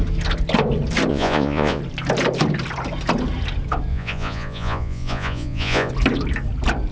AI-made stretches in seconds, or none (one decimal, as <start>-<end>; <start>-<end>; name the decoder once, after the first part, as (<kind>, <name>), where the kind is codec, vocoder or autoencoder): 1.1-1.8 (vocoder, Vocos); 3.9-5.9